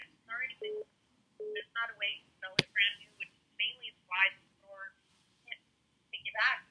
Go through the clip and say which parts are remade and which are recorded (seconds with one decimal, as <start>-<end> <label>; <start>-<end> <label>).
0.0-6.7 recorded